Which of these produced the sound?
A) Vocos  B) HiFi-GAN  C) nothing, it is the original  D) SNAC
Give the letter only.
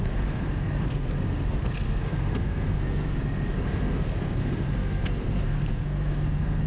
D